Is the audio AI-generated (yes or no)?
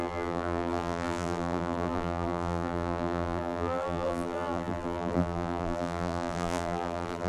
yes